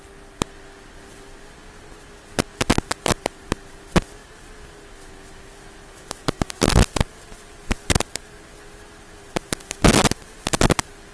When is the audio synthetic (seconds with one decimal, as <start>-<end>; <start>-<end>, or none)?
none